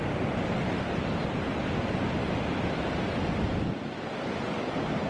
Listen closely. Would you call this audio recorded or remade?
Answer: recorded